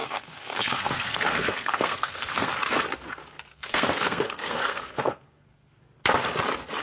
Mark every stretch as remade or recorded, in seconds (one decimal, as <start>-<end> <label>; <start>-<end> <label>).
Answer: 0.0-2.5 remade; 2.5-3.5 recorded; 3.5-5.8 remade; 5.8-6.8 recorded